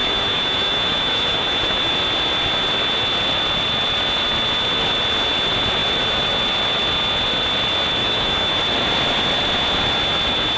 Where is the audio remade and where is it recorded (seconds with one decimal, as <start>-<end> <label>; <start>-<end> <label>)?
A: 0.0-1.9 remade; 1.9-8.0 recorded; 8.0-8.6 remade; 8.6-10.6 recorded